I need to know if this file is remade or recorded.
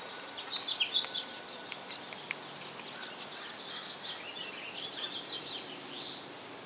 recorded